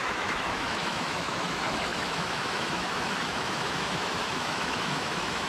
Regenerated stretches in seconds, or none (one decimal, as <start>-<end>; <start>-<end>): 0.0-5.5